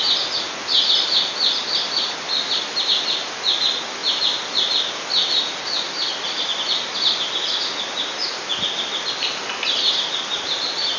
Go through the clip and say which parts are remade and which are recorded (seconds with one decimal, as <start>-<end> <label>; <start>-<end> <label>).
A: 0.0-11.0 recorded